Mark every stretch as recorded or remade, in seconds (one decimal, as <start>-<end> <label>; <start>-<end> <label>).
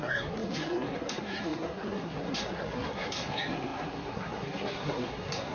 0.0-5.5 remade